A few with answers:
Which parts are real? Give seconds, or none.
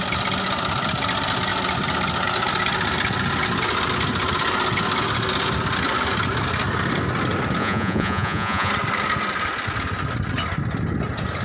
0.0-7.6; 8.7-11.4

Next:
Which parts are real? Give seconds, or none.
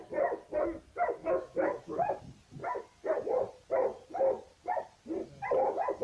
0.0-1.2; 2.2-6.0